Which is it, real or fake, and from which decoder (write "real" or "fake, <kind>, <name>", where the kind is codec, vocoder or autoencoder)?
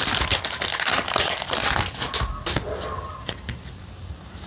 real